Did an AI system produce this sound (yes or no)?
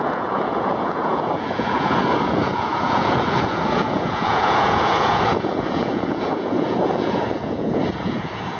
yes